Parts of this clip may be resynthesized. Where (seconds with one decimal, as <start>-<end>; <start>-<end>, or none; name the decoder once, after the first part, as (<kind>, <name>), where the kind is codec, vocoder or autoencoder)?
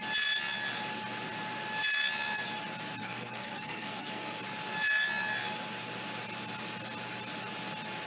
3.0-4.4 (codec, SNAC)